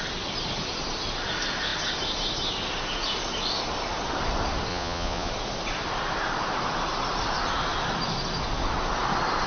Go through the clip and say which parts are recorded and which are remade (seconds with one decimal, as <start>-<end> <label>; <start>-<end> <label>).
0.0-4.7 recorded; 4.7-5.3 remade; 5.3-9.5 recorded

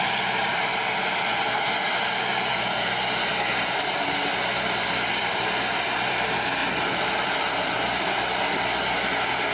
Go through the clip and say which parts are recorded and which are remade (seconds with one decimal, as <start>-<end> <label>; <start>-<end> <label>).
0.0-9.5 recorded

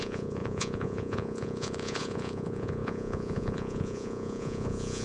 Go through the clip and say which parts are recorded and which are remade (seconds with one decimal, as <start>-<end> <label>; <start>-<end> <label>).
0.0-5.0 remade